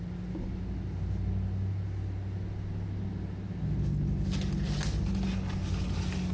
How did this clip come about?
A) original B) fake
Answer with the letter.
A